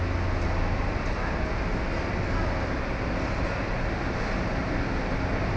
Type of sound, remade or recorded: recorded